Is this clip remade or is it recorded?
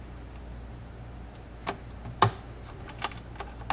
recorded